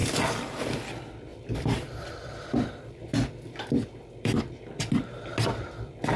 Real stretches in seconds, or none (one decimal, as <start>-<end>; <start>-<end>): 0.6-1.3; 4.4-6.2